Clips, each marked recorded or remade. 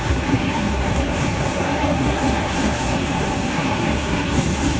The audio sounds remade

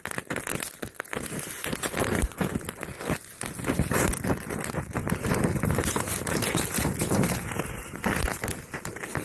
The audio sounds recorded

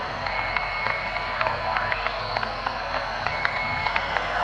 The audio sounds remade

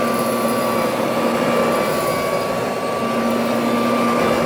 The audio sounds recorded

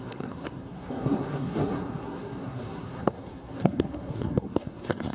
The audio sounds remade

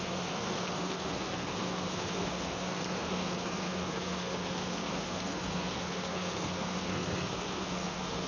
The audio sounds remade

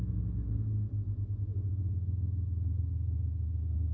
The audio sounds recorded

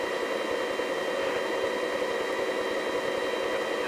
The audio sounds recorded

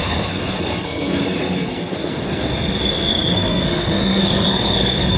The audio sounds remade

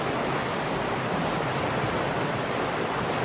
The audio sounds recorded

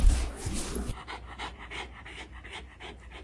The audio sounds recorded